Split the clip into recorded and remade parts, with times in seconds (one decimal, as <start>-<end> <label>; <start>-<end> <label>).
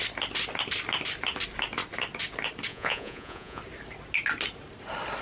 0.0-2.7 recorded; 2.7-3.6 remade; 3.6-5.2 recorded